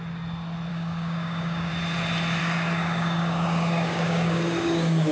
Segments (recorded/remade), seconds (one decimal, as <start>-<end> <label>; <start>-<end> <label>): 0.0-0.7 recorded; 0.7-1.7 remade; 1.7-2.4 recorded; 2.4-5.1 remade